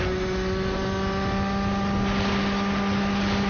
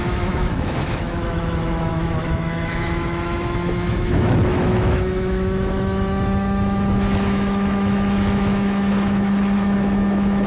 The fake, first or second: second